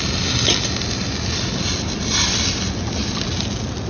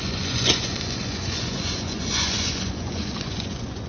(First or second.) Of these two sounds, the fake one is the second